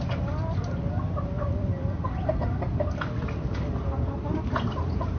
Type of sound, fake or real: real